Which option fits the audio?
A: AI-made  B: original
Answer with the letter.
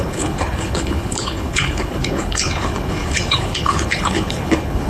A